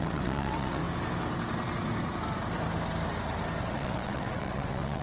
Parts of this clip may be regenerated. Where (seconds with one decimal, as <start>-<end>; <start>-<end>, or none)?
0.0-0.8; 3.6-5.0